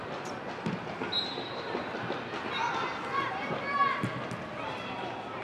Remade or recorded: recorded